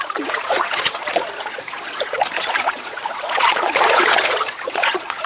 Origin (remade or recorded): remade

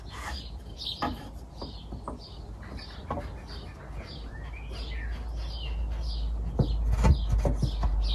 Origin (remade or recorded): recorded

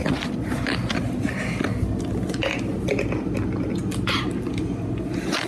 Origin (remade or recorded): recorded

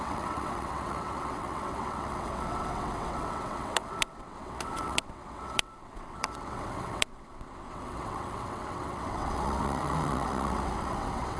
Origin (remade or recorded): remade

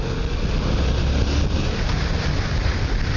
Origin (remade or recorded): recorded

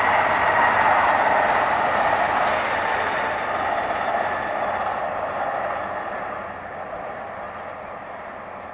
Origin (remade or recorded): recorded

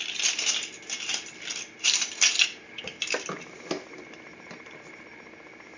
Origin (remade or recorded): remade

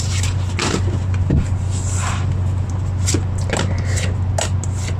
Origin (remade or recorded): recorded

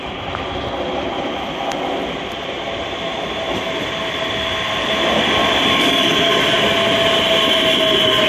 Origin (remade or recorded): recorded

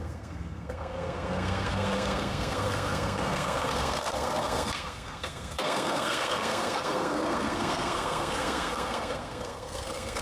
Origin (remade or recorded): remade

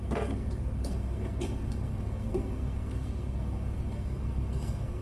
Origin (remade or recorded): remade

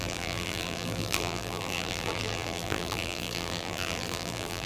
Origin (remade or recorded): remade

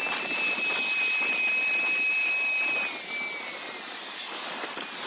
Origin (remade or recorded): recorded